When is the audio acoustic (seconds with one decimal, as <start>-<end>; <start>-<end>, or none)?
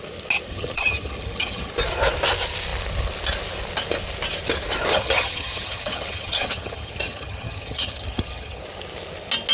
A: 0.0-0.5; 1.7-4.9; 8.6-9.5